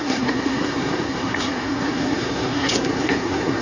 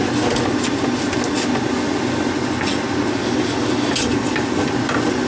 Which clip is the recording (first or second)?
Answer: second